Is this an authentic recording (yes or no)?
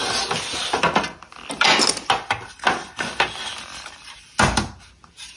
yes